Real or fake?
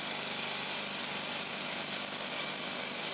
real